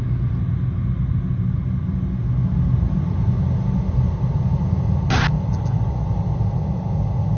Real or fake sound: real